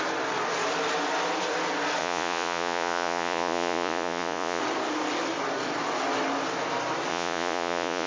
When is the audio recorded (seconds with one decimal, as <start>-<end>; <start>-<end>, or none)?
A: 0.0-2.0; 4.6-7.1